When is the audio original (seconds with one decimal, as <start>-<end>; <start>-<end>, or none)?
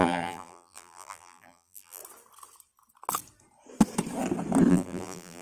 2.0-4.7